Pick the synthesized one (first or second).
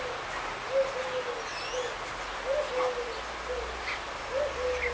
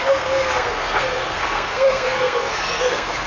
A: second